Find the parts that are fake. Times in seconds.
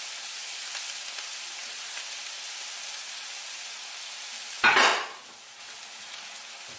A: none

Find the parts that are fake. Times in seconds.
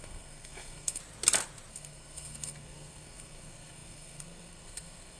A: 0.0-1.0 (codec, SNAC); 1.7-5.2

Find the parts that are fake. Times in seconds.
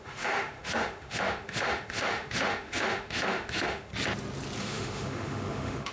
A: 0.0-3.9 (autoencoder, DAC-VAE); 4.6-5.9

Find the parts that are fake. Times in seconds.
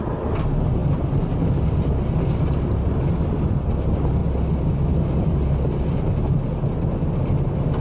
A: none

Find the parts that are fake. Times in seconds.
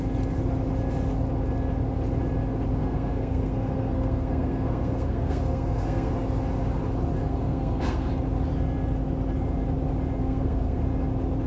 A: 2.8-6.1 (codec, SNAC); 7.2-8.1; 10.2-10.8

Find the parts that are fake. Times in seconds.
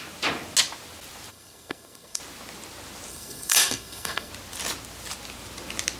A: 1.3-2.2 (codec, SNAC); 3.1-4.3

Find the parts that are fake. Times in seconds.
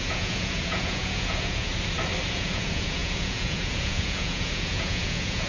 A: 0.0-1.7 (vocoder, Vocos); 2.3-5.5